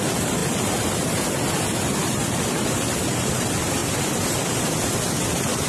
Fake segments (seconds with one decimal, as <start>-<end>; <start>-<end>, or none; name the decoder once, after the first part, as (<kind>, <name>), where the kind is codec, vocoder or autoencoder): none